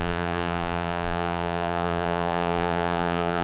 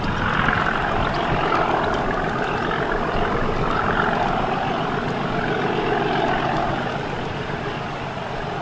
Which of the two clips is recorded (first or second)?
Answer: second